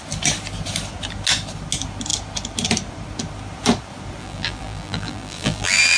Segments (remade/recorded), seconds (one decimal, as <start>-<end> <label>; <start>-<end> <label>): 0.0-4.2 recorded; 4.2-6.0 remade